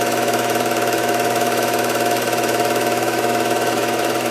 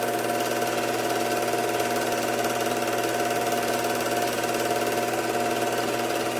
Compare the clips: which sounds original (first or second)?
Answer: second